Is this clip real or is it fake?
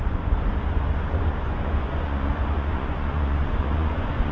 fake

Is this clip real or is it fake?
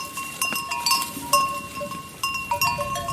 real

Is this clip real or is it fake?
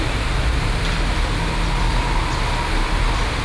real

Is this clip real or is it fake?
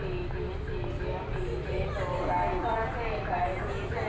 real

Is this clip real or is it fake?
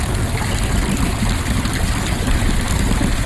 real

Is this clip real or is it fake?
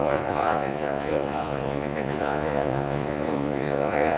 fake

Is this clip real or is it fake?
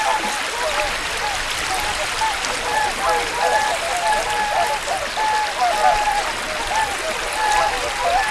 real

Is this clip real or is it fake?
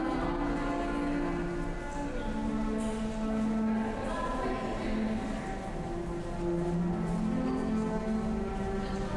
real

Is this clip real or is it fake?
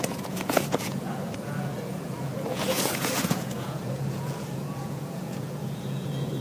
fake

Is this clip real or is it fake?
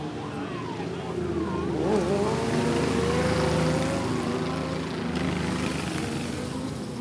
real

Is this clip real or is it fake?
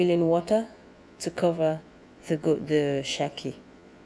fake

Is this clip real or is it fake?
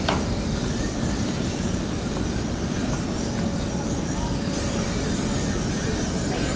real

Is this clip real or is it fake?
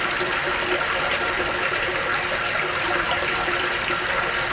real